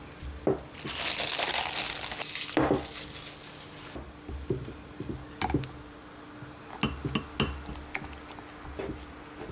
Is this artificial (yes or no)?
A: no